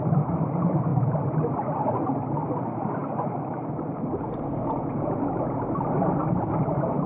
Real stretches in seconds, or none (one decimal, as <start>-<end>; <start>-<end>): 0.0-6.2